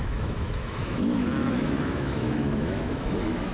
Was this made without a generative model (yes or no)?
no